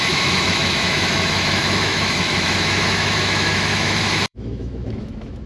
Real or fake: fake